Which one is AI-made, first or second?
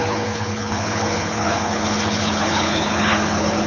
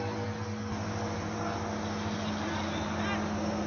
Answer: first